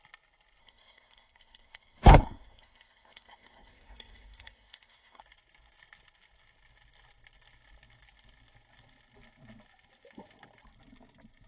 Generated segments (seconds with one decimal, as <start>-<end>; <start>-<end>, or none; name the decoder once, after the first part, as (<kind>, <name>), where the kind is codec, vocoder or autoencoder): 0.6-5.2 (codec, SNAC)